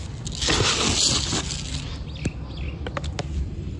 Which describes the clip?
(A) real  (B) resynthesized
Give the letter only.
A